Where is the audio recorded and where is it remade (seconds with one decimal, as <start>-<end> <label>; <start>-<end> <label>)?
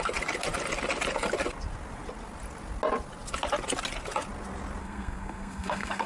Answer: 0.0-4.8 recorded; 4.8-6.1 remade